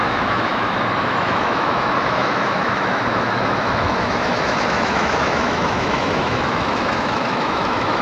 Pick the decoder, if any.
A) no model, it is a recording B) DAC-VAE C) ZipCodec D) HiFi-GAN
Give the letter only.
B